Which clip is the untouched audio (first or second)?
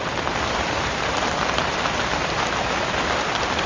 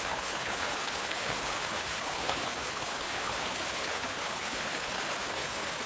first